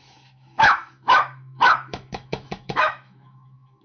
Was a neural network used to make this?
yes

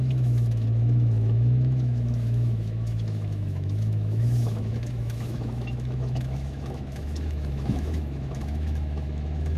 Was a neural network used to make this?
yes